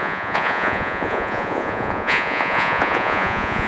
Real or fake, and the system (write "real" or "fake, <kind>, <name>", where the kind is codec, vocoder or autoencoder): fake, vocoder, Vocos